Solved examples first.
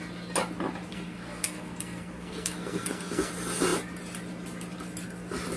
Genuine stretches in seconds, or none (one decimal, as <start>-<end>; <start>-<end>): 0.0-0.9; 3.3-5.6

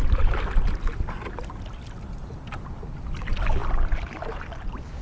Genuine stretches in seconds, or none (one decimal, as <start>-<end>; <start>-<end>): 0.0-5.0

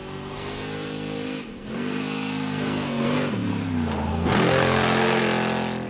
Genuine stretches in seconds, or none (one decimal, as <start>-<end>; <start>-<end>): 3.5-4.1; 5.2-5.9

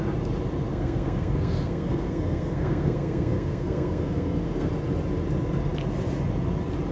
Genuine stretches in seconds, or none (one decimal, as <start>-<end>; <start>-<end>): 0.0-0.7; 4.7-6.9

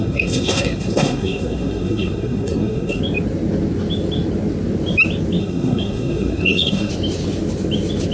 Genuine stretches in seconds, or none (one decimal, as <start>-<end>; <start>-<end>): 3.0-5.4; 6.9-8.1

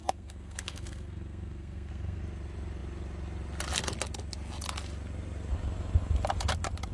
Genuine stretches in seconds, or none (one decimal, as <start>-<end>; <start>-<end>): 2.2-6.9